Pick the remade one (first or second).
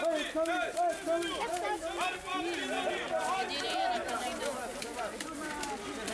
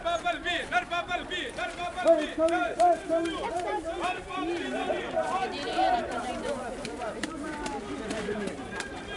second